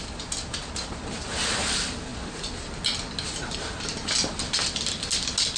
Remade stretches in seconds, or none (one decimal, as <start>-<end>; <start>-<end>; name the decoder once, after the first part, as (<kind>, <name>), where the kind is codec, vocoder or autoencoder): none